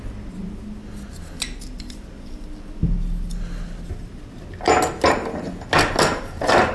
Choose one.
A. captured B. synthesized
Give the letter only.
A